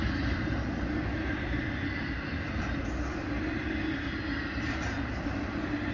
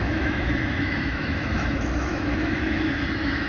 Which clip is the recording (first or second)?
first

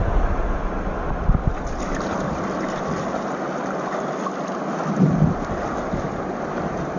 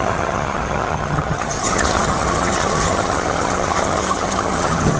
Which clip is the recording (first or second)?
first